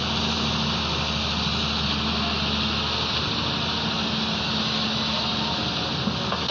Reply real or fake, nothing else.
real